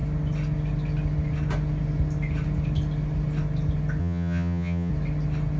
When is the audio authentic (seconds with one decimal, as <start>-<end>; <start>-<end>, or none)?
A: 0.0-4.0; 4.9-5.6